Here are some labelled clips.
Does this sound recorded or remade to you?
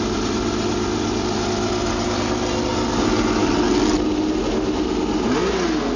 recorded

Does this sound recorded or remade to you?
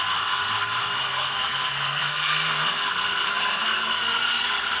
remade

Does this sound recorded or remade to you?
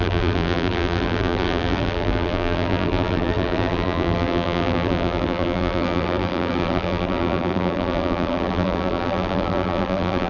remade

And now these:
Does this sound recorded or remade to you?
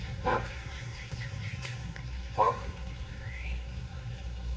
remade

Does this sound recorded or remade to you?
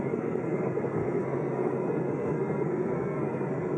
remade